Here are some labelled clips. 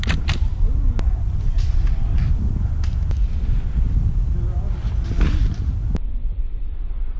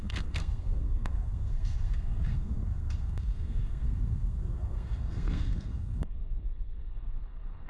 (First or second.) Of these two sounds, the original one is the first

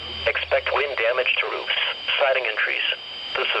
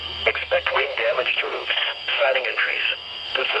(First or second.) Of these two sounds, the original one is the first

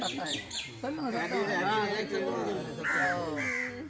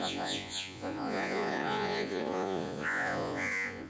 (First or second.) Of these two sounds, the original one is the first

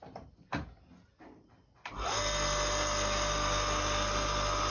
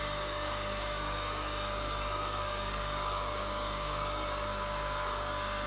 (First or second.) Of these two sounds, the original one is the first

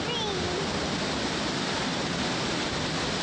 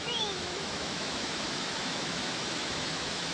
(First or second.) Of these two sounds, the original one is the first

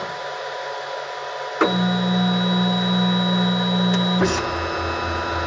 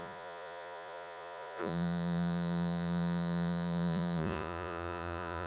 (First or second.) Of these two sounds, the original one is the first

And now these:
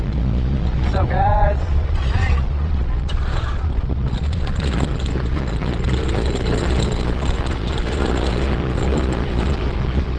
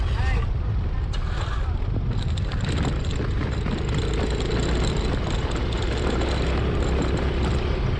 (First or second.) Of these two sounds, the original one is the second